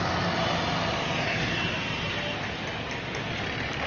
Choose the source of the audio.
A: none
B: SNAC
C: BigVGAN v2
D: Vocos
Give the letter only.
A